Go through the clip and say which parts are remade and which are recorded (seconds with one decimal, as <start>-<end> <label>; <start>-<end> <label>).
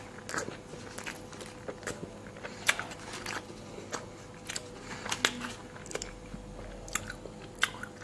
0.0-8.0 recorded